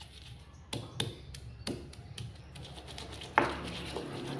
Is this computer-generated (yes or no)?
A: no